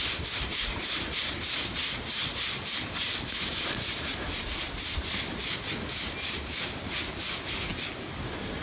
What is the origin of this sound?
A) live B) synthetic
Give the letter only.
A